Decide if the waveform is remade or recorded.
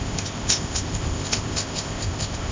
remade